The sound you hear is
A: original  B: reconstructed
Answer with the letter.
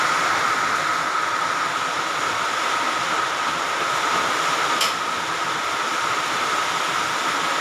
A